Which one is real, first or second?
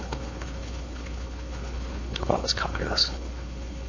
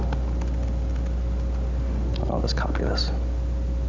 second